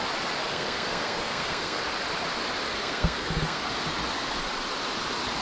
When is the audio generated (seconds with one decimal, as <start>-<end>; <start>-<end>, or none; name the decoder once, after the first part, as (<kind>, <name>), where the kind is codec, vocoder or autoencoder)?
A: 0.5-1.8 (codec, SNAC); 2.8-3.7